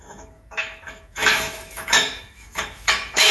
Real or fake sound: fake